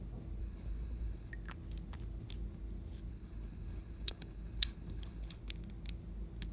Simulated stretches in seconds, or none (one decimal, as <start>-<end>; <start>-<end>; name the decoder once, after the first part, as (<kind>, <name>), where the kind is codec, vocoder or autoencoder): 0.4-1.3 (codec, HILCodec); 3.1-5.4